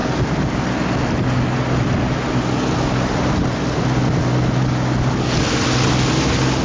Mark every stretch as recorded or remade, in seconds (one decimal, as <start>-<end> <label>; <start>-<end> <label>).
0.0-6.6 recorded